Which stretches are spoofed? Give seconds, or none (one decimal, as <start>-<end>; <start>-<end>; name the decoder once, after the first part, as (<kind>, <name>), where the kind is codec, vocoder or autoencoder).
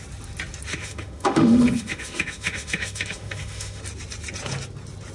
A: 0.7-3.8 (autoencoder, DAC-VAE)